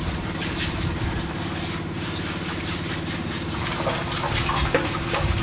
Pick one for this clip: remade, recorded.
remade